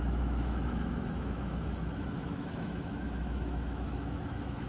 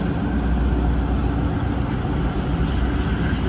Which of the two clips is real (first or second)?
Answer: second